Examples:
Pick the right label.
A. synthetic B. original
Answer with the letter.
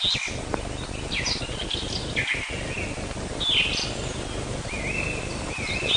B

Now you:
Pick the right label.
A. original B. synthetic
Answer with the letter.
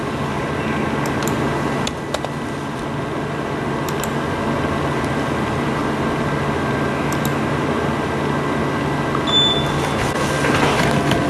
A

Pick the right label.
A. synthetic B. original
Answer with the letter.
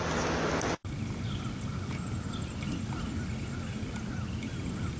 B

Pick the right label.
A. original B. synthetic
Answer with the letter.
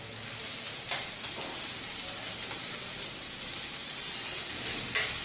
A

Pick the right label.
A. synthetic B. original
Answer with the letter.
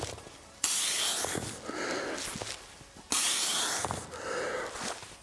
B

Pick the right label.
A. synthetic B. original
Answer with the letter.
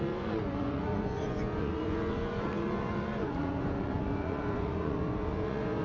A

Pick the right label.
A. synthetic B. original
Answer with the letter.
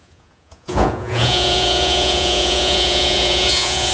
A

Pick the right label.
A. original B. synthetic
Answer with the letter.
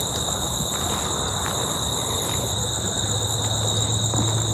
A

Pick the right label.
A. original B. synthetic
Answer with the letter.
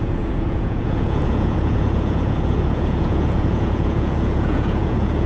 B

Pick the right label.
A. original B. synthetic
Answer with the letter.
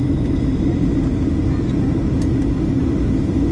A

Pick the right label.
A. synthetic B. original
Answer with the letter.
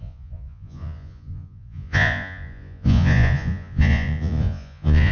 A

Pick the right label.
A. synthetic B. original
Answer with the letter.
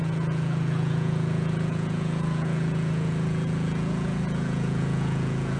A